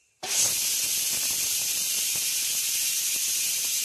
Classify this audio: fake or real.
real